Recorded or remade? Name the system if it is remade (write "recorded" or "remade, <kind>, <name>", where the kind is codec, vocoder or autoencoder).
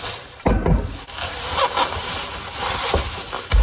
recorded